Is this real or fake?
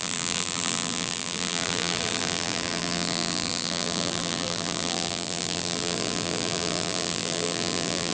fake